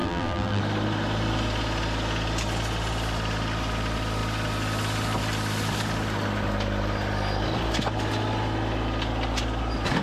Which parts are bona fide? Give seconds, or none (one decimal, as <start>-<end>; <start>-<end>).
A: 0.6-10.0